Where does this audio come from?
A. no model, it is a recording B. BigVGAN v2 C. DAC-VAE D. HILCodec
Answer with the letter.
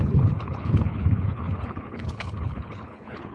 D